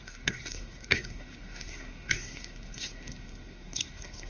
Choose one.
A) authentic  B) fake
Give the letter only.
B